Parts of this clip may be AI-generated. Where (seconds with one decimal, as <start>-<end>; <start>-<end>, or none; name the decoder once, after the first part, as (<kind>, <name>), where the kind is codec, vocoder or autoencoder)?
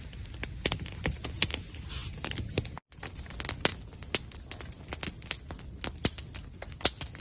none